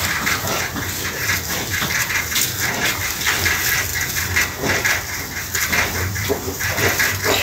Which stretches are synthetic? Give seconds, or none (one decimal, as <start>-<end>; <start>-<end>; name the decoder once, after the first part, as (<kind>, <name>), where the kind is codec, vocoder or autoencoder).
none